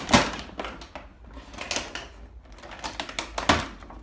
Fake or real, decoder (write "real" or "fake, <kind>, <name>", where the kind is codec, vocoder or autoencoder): real